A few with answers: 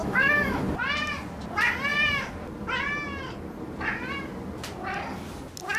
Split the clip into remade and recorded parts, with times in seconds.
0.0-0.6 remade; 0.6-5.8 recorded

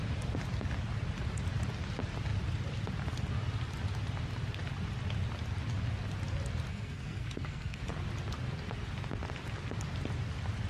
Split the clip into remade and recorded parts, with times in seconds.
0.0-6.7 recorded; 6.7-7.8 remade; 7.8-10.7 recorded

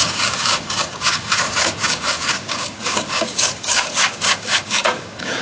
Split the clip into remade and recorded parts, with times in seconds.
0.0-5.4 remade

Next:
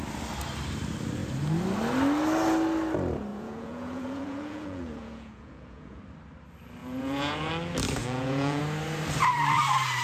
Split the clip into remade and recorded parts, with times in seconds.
0.0-3.3 recorded; 3.3-6.0 remade; 6.0-6.8 recorded; 6.8-7.5 remade; 7.5-8.0 recorded; 8.0-8.6 remade; 8.6-10.0 recorded

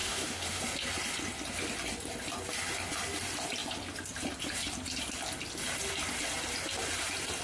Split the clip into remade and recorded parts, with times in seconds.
0.0-0.6 remade; 0.6-7.4 recorded

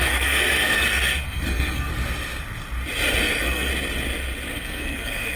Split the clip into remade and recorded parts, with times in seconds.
0.0-1.9 remade; 1.9-3.2 recorded; 3.2-3.7 remade; 3.7-4.5 recorded; 4.5-5.4 remade

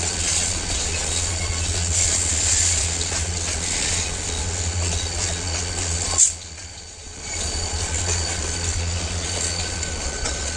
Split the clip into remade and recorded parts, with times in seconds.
0.0-10.6 remade

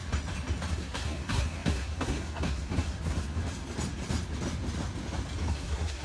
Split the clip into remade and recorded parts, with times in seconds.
0.0-0.7 recorded; 0.7-3.4 remade; 3.4-5.5 recorded; 5.5-6.0 remade